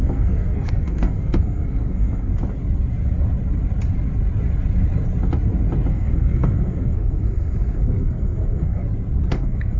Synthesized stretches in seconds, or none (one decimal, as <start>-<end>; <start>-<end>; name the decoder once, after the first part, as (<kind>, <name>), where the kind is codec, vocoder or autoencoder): 0.0-2.3 (codec, SNAC); 5.9-8.8; 9.3-9.8